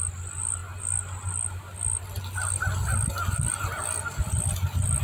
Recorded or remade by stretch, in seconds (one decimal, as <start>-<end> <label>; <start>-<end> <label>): 0.0-5.0 recorded

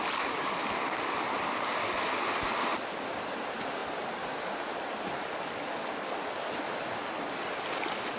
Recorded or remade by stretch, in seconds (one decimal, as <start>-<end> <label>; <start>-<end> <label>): 0.0-8.2 recorded

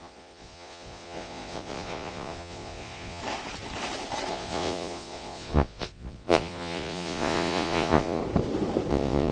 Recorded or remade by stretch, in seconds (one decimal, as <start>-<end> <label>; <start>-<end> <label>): 0.0-3.2 remade; 3.2-4.3 recorded; 4.3-8.2 remade; 8.2-8.9 recorded; 8.9-9.3 remade